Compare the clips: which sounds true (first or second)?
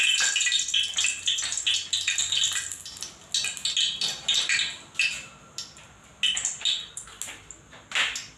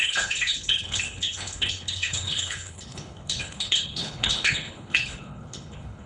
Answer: first